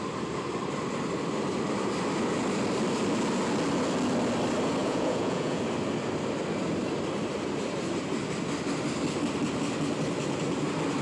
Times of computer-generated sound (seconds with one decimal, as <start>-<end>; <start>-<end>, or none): 4.8-5.6